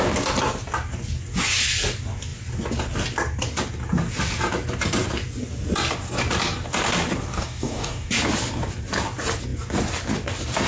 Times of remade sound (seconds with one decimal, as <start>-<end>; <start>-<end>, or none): 7.3-8.1